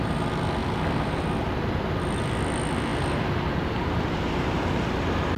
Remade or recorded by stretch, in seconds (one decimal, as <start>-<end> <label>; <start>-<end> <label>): 0.0-5.4 recorded